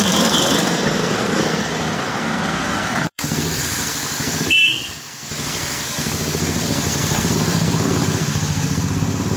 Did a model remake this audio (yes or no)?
yes